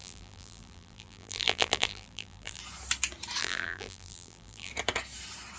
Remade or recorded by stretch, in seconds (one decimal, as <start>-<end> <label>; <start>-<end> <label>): 0.0-2.6 remade; 2.6-3.4 recorded; 3.4-4.7 remade; 4.7-5.6 recorded